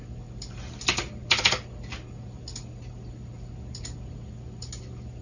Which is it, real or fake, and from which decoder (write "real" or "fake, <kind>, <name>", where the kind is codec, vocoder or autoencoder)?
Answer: real